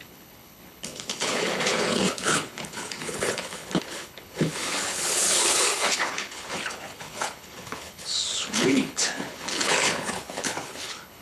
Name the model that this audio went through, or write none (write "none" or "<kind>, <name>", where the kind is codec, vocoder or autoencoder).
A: codec, HILCodec